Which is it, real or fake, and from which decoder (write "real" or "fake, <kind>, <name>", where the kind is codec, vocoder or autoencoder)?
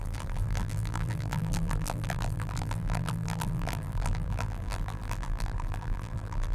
fake, vocoder, BigVGAN v2